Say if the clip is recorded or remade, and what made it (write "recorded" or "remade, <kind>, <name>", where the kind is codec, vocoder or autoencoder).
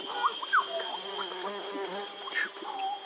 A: recorded